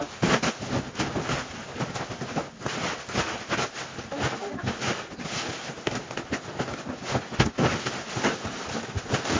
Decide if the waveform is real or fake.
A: real